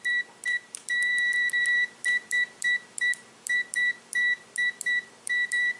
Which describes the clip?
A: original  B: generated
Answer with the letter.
B